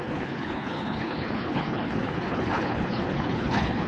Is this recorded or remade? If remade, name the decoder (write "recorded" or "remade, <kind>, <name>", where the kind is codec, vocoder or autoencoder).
remade, codec, HILCodec